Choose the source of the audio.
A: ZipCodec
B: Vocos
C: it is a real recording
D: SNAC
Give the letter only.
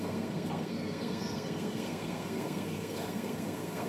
D